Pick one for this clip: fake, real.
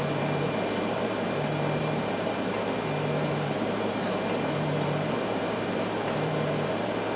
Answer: fake